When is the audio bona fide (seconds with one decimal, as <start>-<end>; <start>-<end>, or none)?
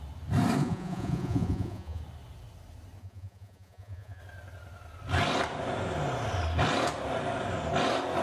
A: 0.0-0.6; 2.0-3.0; 4.2-8.2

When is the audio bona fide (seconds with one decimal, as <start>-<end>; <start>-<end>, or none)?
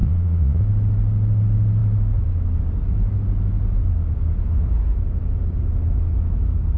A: 0.6-6.8